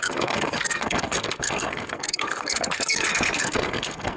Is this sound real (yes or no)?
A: no